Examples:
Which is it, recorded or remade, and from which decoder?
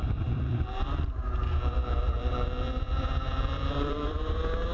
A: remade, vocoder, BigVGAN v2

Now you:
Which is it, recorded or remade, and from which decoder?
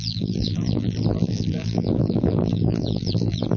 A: remade, vocoder, BigVGAN v2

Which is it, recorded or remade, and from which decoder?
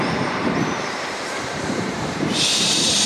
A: remade, vocoder, BigVGAN v2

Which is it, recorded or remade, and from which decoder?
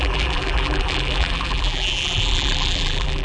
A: remade, vocoder, BigVGAN v2